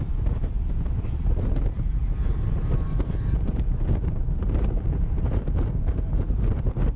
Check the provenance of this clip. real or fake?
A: fake